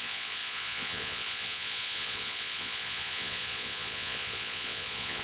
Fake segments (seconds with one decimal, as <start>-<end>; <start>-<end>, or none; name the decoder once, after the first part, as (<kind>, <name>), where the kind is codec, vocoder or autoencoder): 0.0-5.2 (vocoder, Vocos)